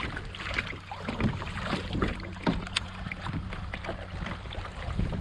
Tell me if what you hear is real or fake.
real